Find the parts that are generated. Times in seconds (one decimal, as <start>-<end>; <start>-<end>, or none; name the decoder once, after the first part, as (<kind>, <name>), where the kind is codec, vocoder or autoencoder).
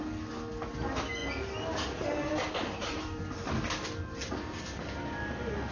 none